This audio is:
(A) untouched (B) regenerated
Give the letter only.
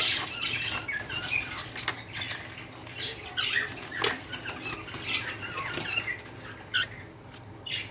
A